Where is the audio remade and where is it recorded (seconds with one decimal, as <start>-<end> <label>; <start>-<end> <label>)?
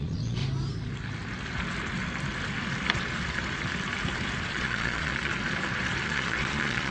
0.0-0.4 remade; 0.4-4.5 recorded; 4.5-5.3 remade; 5.3-6.0 recorded; 6.0-6.9 remade